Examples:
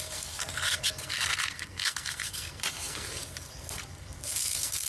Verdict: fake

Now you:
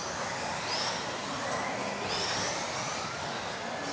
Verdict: real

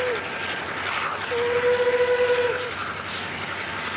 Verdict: real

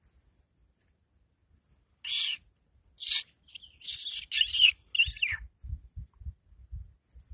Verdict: real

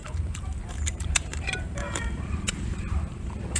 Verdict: fake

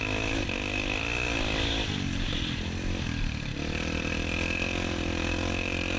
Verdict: fake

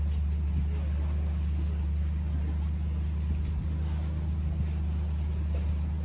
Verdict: real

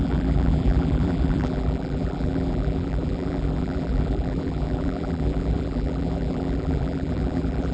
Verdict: fake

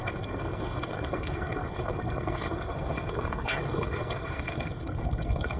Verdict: fake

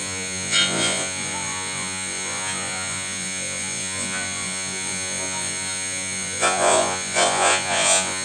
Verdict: fake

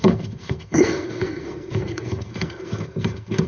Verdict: fake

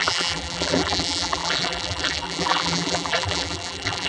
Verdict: fake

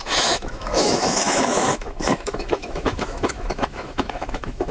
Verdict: fake